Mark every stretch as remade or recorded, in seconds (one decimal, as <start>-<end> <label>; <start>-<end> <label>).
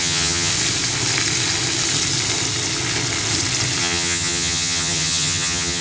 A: 0.0-0.5 remade; 0.5-3.8 recorded; 3.8-5.8 remade